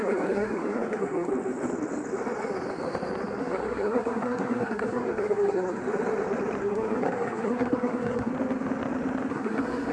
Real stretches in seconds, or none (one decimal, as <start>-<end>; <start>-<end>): 1.3-3.4; 5.8-6.6; 8.3-9.3